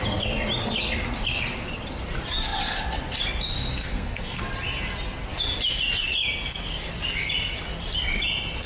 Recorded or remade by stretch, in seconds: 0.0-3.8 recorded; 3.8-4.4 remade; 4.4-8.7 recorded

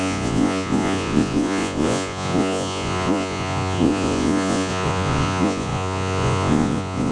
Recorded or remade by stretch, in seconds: 0.0-7.1 remade

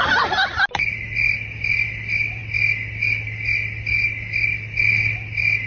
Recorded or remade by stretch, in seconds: 0.0-5.7 recorded